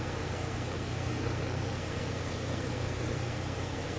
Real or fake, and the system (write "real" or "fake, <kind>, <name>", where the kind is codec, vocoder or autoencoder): fake, codec, SNAC